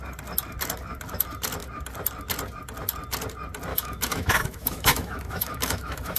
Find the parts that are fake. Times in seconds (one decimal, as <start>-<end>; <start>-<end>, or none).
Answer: 3.7-6.2